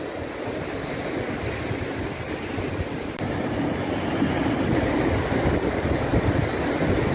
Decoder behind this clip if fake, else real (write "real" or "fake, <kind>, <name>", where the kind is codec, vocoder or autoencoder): real